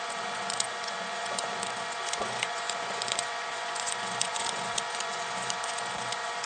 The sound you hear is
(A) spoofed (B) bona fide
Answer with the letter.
A